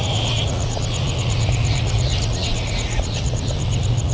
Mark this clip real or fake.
fake